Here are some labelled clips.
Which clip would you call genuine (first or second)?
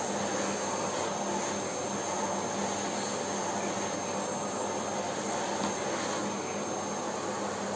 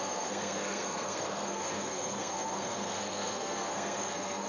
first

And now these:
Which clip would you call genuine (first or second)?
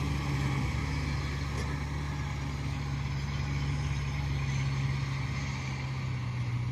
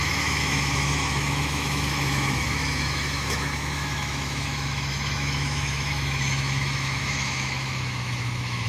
first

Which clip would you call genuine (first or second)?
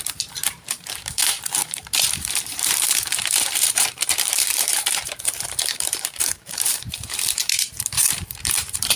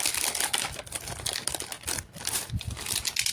second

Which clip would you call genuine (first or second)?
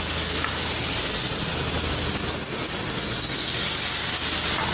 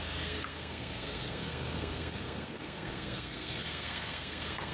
first